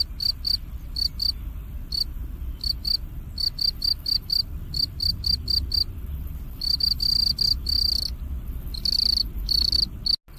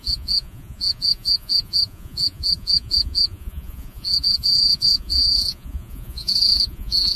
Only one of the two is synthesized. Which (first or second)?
second